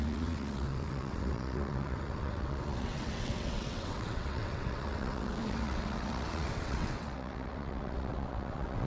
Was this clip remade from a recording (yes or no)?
yes